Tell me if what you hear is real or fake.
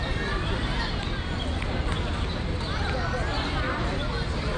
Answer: real